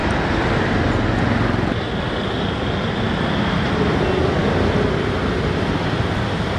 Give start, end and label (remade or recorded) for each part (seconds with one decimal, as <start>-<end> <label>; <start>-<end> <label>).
0.0-6.6 recorded